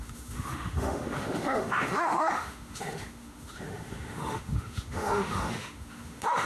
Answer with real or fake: fake